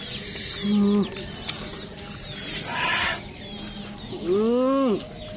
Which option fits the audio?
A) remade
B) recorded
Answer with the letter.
B